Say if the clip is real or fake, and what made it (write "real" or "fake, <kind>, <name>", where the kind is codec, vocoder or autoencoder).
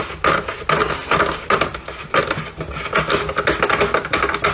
real